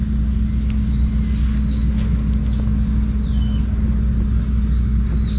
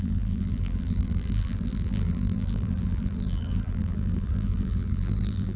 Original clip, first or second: first